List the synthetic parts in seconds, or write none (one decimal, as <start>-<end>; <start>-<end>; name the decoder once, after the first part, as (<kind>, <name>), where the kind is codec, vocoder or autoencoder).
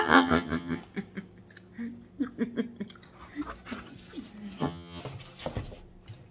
0.0-0.8 (vocoder, HiFi-GAN); 4.6-5.0